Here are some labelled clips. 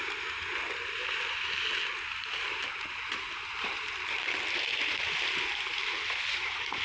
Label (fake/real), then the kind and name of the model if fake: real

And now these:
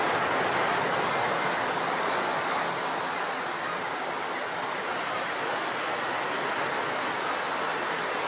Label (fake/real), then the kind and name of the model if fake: real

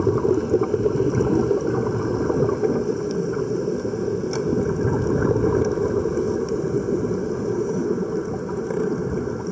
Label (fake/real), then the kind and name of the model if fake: real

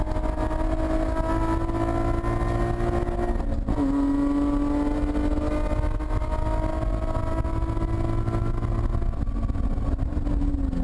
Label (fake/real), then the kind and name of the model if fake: real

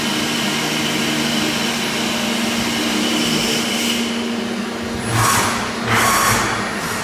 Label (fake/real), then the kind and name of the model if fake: real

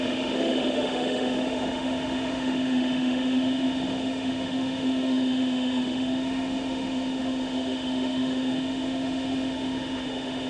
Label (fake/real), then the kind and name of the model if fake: fake, autoencoder, DAC-VAE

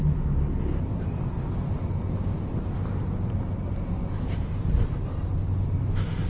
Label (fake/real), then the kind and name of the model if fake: real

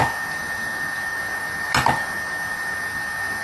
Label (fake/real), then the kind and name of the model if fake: real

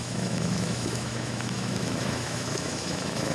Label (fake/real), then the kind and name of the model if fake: fake, autoencoder, DAC-VAE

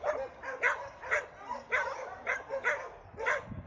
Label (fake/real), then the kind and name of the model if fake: real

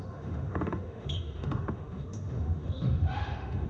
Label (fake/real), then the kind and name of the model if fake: fake, autoencoder, DAC-VAE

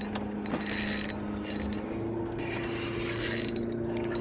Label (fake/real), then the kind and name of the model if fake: real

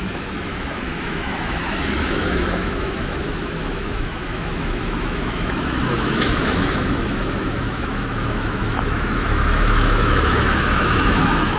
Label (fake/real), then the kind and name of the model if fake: fake, autoencoder, DAC-VAE